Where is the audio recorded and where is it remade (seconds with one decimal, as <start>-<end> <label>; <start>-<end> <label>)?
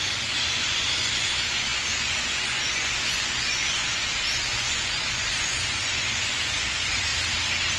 0.0-7.1 remade; 7.1-7.8 recorded